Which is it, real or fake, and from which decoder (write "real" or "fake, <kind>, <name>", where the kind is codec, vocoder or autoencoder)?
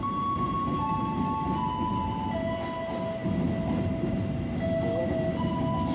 real